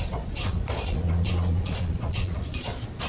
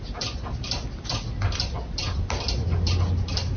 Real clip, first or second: second